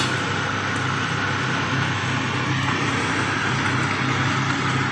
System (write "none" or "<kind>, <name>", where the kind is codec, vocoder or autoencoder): none